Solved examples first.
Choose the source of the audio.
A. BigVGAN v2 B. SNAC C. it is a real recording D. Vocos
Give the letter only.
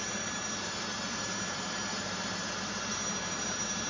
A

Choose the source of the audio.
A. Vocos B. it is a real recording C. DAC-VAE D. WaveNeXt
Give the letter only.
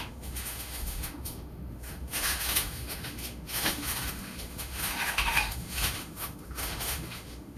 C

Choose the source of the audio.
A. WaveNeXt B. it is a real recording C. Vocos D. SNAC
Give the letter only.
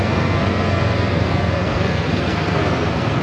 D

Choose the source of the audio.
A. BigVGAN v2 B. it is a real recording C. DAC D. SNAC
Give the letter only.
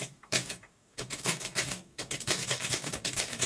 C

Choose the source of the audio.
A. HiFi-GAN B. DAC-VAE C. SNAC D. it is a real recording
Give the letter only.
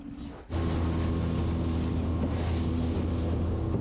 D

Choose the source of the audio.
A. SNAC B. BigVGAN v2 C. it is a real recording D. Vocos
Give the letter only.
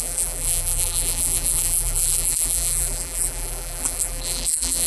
B